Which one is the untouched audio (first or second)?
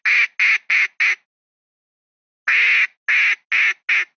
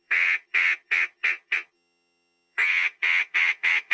first